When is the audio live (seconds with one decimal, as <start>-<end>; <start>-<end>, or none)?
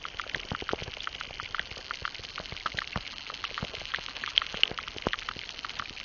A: 0.0-6.0